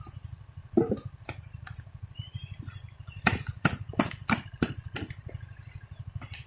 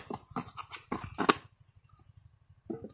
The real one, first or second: second